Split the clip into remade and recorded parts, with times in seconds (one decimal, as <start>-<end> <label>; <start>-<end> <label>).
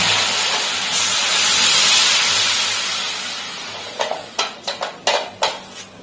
0.0-3.5 recorded; 3.5-4.8 remade; 4.8-6.0 recorded